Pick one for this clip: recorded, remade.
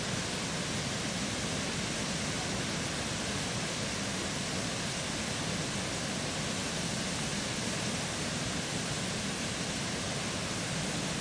recorded